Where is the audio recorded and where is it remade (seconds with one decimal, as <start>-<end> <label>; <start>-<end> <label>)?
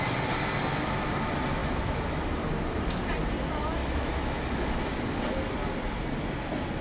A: 0.0-1.6 recorded; 1.6-2.5 remade; 2.5-3.8 recorded; 3.8-4.9 remade; 4.9-6.8 recorded